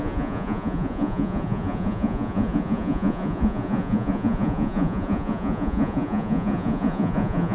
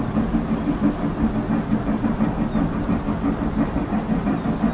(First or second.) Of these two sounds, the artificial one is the first